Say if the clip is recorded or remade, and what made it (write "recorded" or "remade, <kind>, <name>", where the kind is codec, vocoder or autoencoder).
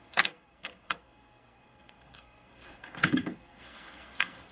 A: remade, codec, SNAC